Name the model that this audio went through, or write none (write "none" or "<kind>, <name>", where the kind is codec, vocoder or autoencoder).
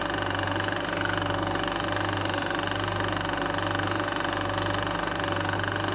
none